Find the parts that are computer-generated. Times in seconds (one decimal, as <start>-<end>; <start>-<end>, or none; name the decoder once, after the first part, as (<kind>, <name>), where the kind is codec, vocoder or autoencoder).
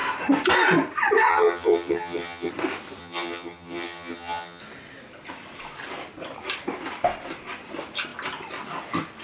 1.3-2.5 (vocoder, HiFi-GAN); 3.0-4.6